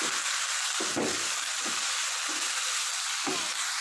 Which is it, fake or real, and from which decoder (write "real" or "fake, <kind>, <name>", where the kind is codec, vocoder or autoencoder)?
real